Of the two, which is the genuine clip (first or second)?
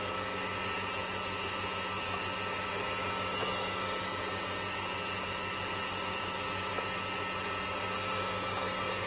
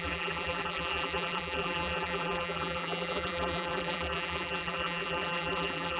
first